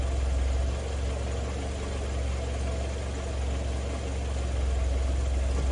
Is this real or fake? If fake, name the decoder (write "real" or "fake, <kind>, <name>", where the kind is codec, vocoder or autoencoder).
real